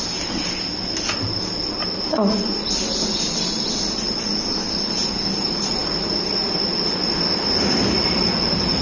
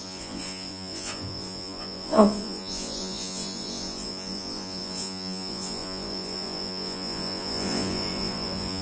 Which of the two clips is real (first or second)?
first